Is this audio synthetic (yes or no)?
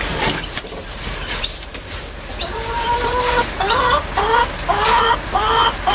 yes